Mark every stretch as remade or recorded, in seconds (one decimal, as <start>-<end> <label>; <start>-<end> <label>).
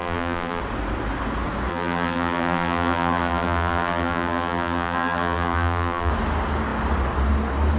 0.0-0.6 remade; 0.6-1.7 recorded; 1.7-6.1 remade; 6.1-7.8 recorded